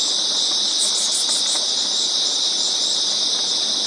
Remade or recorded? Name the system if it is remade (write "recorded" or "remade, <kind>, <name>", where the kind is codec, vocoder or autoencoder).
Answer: recorded